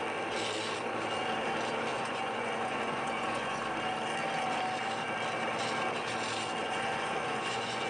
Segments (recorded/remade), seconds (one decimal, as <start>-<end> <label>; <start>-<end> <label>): 0.0-1.9 recorded; 1.9-3.6 remade; 3.6-6.6 recorded; 6.6-7.9 remade